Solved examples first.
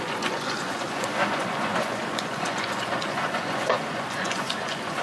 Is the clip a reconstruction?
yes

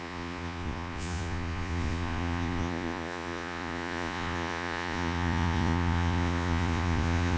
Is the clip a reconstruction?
yes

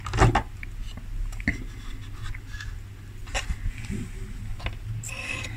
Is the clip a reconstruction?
no